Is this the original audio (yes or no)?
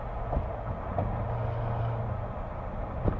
yes